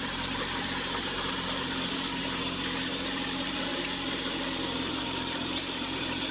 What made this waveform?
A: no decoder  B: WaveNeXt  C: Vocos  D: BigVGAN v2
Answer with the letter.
D